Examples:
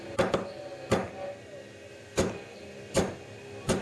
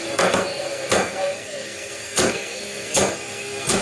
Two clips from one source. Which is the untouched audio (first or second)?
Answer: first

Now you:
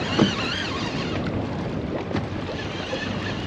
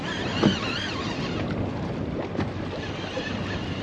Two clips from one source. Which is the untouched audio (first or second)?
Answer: second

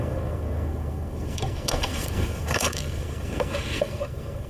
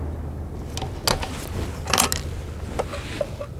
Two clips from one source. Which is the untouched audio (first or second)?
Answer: second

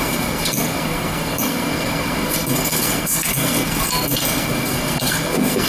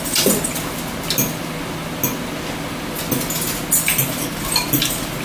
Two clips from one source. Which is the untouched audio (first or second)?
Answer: second